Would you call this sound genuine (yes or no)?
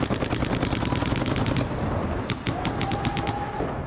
yes